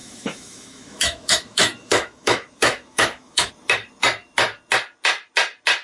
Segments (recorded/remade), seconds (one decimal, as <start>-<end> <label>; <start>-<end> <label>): 0.0-3.5 remade; 3.5-5.8 recorded